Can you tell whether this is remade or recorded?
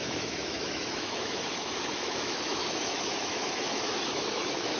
remade